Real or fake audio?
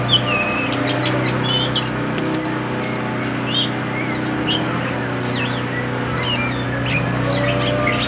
real